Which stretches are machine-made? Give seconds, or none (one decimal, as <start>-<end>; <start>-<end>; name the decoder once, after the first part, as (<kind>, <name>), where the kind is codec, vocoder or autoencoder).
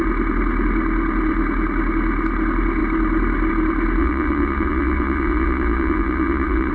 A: 4.0-6.7 (vocoder, Vocos)